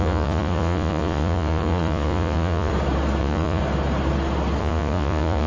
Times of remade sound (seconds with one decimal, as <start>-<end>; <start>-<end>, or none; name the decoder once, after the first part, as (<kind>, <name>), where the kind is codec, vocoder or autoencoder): 0.0-2.7 (vocoder, Vocos); 3.2-3.6; 4.6-5.5